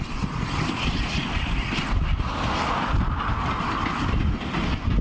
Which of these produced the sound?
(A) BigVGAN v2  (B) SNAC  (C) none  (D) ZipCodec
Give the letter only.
C